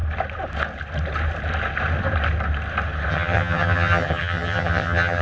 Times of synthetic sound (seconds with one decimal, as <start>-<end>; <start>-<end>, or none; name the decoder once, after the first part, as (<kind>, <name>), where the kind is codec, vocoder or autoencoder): 3.1-5.2 (vocoder, HiFi-GAN)